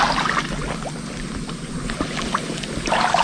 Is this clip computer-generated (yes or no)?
no